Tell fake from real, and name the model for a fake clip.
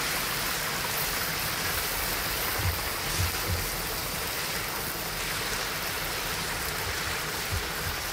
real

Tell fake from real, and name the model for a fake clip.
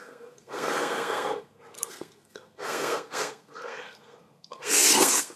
fake, codec, SNAC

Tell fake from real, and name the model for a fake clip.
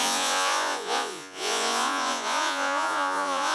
fake, vocoder, Vocos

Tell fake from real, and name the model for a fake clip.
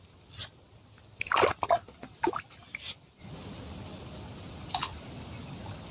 real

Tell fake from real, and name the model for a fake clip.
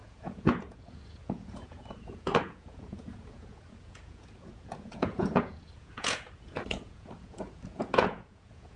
fake, vocoder, Vocos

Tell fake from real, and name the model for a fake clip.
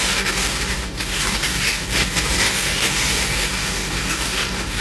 fake, codec, DAC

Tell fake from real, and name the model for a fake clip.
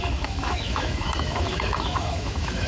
fake, autoencoder, DAC-VAE